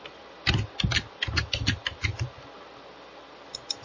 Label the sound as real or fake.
real